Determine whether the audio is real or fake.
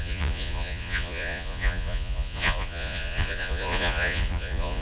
fake